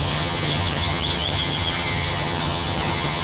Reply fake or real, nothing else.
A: fake